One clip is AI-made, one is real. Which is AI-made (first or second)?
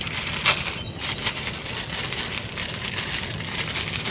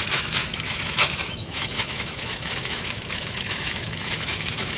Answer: second